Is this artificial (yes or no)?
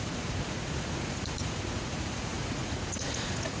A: yes